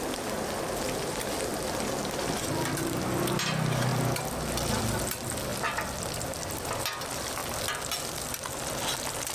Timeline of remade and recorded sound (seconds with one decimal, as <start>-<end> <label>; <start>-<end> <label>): 0.0-9.3 recorded